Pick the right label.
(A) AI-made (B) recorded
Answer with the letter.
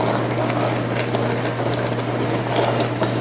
B